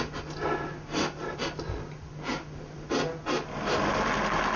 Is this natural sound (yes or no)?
yes